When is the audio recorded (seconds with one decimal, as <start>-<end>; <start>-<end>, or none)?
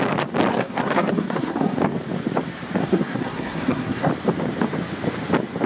0.0-0.5; 1.8-2.8; 4.1-5.7